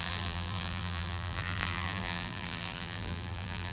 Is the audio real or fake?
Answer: fake